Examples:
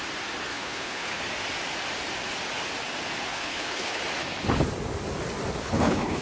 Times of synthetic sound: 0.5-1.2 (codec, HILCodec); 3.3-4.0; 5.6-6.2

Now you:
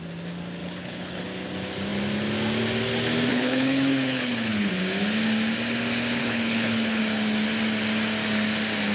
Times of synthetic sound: 0.6-1.2 (codec, HILCodec); 3.3-4.7; 6.2-7.0

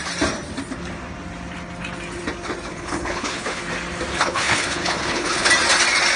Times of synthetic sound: 2.7-3.6 (codec, HILCodec); 4.1-5.5